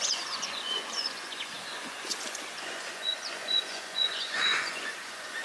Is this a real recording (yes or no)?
no